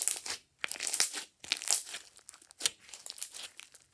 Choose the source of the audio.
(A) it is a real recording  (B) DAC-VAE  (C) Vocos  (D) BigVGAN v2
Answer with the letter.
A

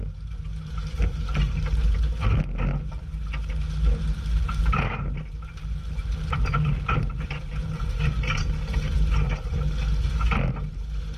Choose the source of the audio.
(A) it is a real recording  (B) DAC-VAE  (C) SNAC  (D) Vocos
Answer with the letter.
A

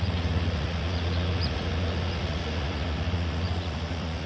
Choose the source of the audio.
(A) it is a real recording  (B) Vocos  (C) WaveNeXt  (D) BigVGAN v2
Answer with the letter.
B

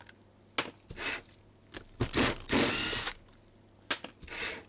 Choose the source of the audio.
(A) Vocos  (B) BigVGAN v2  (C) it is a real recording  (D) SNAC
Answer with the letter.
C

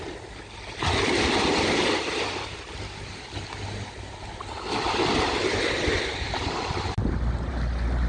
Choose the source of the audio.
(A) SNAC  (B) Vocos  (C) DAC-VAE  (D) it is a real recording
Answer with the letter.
D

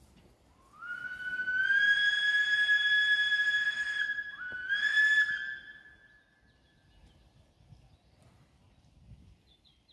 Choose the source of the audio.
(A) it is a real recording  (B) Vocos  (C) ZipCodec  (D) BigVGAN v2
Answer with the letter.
A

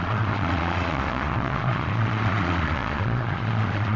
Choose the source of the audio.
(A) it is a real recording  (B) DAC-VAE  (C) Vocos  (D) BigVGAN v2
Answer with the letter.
C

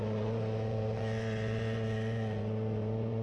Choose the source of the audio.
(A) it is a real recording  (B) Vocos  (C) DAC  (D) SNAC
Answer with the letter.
B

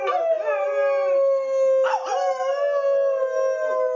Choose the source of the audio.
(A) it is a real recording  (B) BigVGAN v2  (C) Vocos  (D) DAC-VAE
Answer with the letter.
A